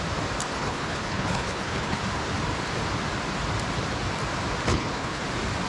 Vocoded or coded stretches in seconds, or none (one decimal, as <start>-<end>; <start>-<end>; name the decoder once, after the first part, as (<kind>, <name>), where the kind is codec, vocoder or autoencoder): 0.6-2.0 (codec, HILCodec); 4.7-5.2